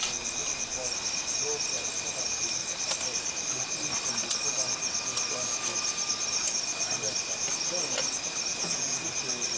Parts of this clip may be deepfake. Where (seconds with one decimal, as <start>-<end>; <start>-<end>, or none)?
8.5-9.1